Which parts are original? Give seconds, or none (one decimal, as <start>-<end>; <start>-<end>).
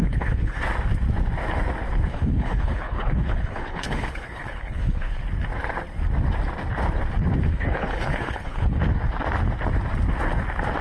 0.6-2.1; 5.2-7.5; 8.8-10.8